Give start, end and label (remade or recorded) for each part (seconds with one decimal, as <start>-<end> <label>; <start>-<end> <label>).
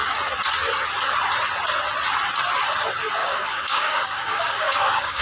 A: 0.0-3.2 recorded; 3.2-5.2 remade